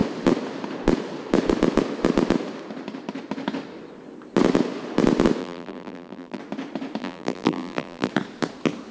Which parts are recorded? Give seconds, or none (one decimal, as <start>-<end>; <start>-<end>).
0.0-5.4; 6.4-7.0; 8.1-8.9